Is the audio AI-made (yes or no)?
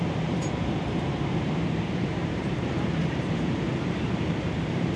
yes